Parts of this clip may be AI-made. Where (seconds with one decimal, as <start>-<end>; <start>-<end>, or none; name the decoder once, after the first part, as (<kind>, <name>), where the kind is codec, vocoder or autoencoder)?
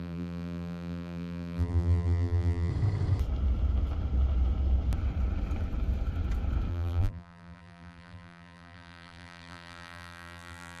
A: 0.0-2.7 (vocoder, BigVGAN v2); 6.7-10.8